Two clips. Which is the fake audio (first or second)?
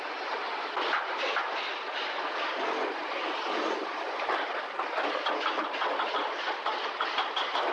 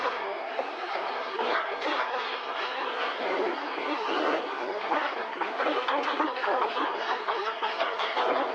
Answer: second